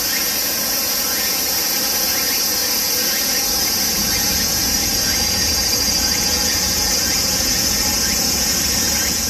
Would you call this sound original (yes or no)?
no